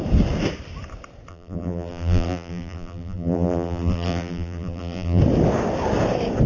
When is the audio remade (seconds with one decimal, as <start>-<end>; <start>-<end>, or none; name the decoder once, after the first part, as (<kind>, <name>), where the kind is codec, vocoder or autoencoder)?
1.3-5.2 (vocoder, BigVGAN v2)